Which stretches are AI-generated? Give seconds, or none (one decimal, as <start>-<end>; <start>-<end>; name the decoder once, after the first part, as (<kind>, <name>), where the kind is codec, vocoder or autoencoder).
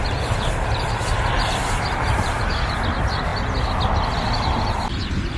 none